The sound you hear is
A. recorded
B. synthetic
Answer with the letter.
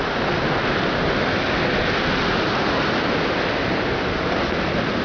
A